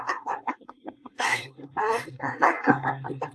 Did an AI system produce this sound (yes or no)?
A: yes